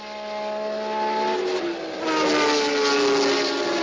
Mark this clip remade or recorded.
recorded